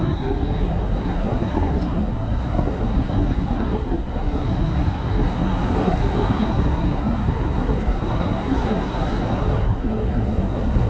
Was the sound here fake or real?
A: fake